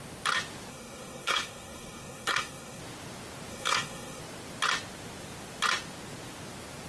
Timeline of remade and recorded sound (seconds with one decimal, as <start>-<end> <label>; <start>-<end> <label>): 0.0-0.7 recorded; 0.7-2.8 remade; 2.8-3.5 recorded; 3.5-4.2 remade; 4.2-6.9 recorded